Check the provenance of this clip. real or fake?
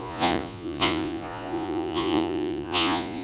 fake